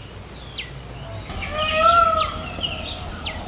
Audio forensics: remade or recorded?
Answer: recorded